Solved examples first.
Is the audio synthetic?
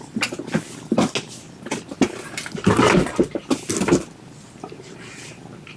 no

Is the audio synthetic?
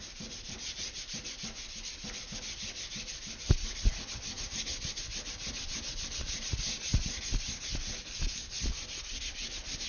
no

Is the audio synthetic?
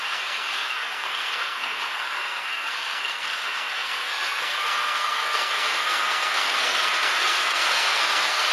yes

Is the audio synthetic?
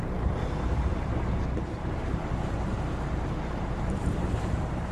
yes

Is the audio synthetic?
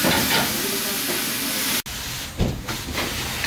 no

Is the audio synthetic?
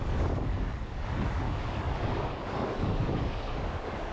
yes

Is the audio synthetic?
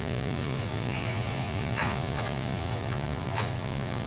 yes